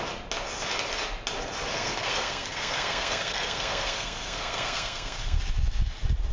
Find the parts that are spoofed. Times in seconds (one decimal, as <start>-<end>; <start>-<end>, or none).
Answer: 1.7-5.4